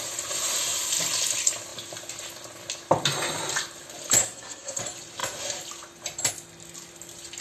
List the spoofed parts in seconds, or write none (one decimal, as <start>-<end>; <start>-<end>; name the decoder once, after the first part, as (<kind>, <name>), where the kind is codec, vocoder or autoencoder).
4.2-4.8 (codec, SNAC)